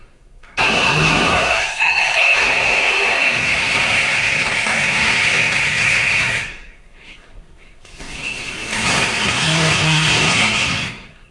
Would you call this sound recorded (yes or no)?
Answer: no